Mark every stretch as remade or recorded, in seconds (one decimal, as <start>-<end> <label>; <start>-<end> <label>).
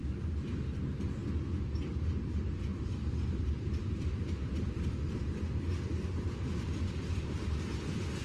0.0-0.8 remade; 0.8-2.7 recorded; 2.7-5.3 remade; 5.3-8.2 recorded